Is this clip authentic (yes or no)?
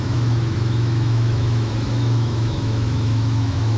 no